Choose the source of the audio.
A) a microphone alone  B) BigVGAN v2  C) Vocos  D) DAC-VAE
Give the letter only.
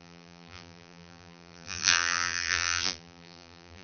B